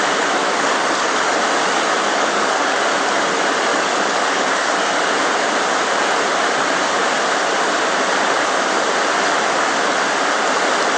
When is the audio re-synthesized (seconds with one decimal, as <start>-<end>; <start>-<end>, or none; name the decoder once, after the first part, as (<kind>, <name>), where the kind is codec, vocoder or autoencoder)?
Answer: 0.4-1.4 (codec, DAC); 2.1-2.8; 3.7-5.0